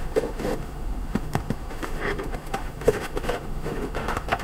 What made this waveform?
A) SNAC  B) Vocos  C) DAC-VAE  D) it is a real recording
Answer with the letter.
C